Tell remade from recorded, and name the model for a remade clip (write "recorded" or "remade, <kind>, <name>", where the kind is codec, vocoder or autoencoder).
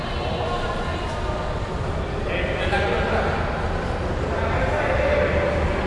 recorded